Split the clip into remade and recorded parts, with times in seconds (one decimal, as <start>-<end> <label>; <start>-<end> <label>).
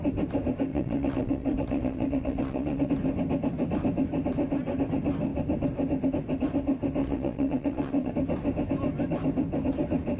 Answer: 0.0-0.7 recorded; 0.7-2.9 remade; 2.9-7.0 recorded; 7.0-8.1 remade; 8.1-10.2 recorded